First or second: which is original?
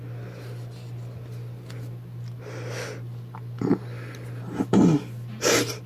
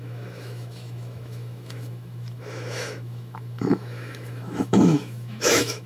first